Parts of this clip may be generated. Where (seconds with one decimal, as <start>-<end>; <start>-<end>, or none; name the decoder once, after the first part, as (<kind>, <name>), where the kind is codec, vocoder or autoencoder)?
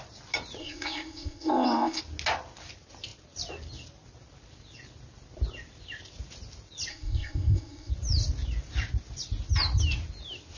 0.6-2.0 (codec, ZipCodec); 6.9-7.9